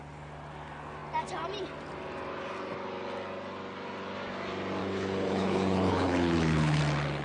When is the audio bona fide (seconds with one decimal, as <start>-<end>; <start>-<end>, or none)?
0.0-4.8; 6.8-7.2